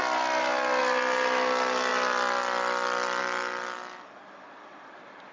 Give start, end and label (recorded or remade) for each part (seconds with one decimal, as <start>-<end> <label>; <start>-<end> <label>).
0.0-5.3 recorded